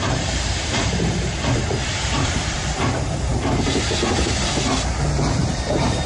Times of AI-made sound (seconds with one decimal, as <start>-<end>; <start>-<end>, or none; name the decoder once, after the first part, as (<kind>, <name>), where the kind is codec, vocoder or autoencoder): 0.0-3.3 (vocoder, BigVGAN v2); 5.0-6.1